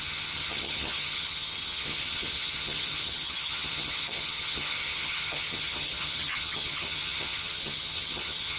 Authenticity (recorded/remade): remade